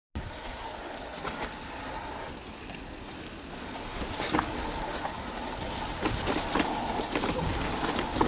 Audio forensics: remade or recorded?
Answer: recorded